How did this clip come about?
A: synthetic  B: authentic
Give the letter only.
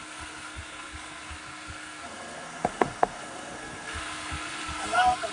A